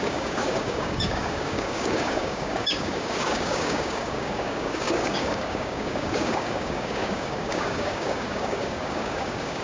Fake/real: fake